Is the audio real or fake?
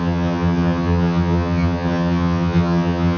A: fake